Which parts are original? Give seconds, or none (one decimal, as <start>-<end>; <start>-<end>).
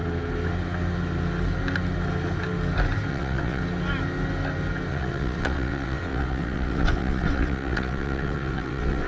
0.0-3.1; 3.6-4.9